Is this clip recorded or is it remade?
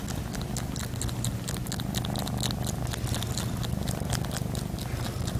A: recorded